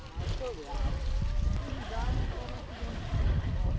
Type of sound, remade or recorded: recorded